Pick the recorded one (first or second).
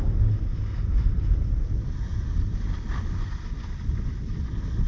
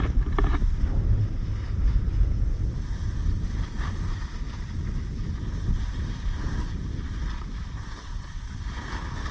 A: first